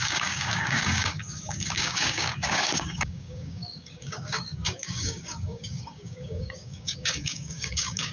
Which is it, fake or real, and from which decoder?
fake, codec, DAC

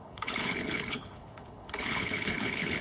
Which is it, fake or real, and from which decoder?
fake, codec, HILCodec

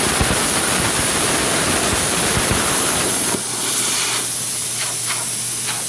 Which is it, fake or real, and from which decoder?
real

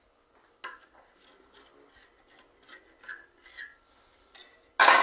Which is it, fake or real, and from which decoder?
real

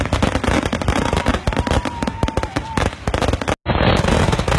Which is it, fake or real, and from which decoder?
real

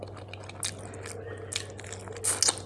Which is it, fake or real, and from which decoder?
real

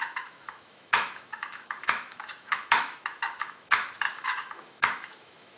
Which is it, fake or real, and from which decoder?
fake, autoencoder, DAC-VAE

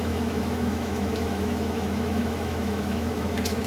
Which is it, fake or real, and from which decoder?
fake, autoencoder, DAC-VAE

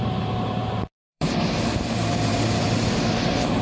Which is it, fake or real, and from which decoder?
fake, vocoder, BigVGAN v2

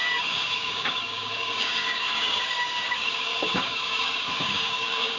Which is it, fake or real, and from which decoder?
fake, codec, DAC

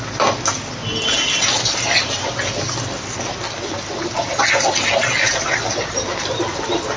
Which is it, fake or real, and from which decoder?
real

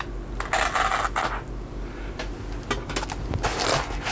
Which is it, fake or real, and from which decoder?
real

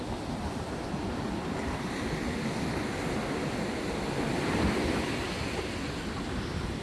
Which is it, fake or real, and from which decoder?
real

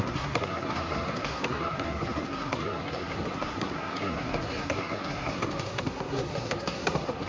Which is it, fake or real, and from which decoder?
fake, codec, SNAC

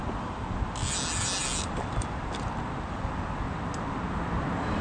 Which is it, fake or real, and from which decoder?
real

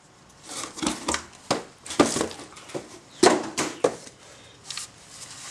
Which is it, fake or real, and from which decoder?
real